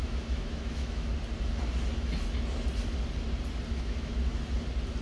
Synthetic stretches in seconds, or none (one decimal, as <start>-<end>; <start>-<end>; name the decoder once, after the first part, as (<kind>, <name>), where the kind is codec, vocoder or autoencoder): 0.0-1.1 (autoencoder, DAC-VAE); 3.7-4.3